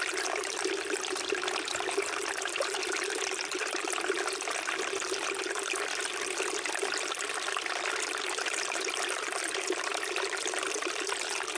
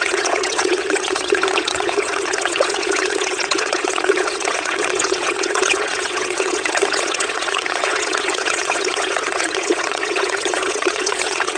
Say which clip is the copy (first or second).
second